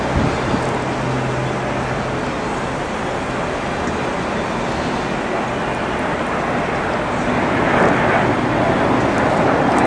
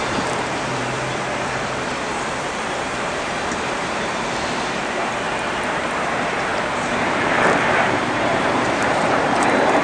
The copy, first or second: second